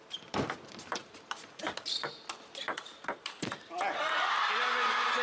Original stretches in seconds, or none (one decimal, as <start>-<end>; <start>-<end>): 0.0-0.9; 1.6-2.7; 3.7-5.2